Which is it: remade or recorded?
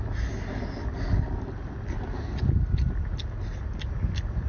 recorded